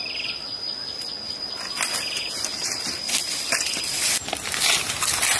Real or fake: real